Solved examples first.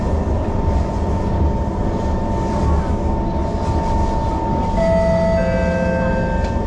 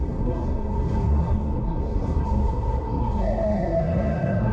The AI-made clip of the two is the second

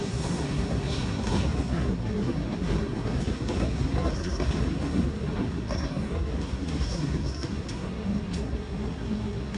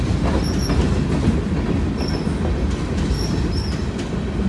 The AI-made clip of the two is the first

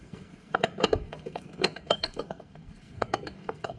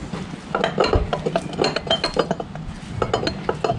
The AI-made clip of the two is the first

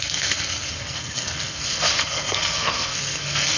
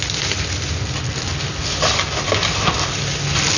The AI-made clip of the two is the first